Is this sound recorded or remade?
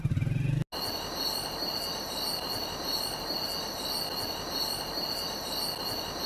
recorded